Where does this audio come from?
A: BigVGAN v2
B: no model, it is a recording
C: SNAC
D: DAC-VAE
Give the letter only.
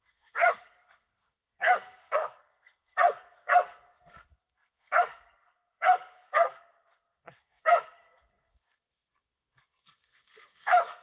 C